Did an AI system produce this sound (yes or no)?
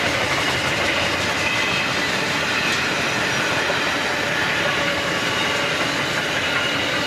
no